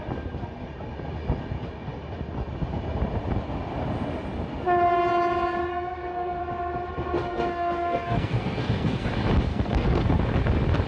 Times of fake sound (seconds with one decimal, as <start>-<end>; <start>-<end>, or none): 5.7-6.4; 7.2-9.1; 9.5-10.2